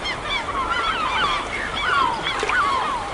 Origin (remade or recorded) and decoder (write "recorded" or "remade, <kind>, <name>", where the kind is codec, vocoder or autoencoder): recorded